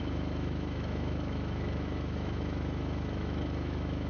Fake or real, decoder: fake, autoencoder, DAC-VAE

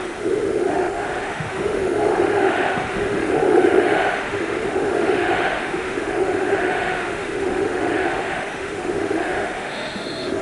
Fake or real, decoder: fake, autoencoder, DAC-VAE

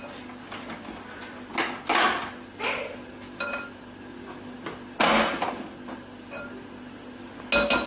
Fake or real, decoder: real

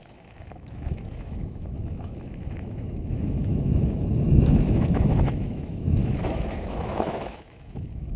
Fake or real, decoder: fake, autoencoder, DAC-VAE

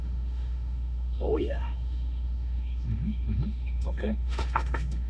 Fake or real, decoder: fake, autoencoder, DAC-VAE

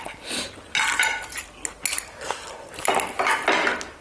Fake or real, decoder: real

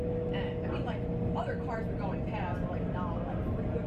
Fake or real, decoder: real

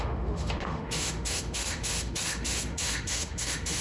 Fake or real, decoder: fake, autoencoder, DAC-VAE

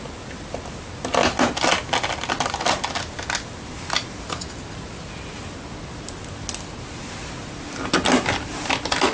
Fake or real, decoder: real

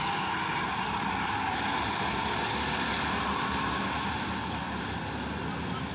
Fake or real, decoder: real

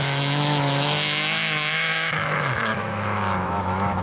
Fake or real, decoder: fake, autoencoder, DAC-VAE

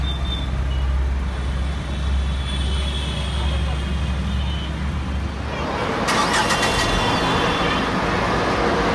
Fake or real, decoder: real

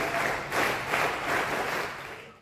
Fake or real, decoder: real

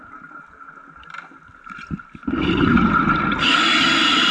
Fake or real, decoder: real